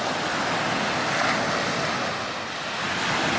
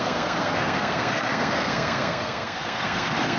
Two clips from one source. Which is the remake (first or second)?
second